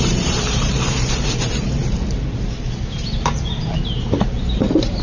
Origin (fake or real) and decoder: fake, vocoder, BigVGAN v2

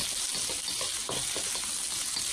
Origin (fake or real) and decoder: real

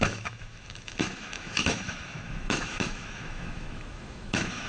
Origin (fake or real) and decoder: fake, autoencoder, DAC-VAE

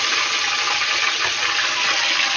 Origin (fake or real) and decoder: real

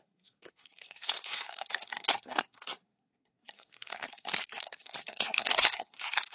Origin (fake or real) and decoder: fake, codec, SNAC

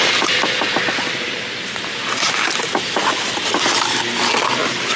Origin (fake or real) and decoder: real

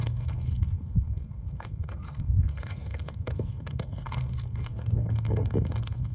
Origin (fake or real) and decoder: fake, codec, SNAC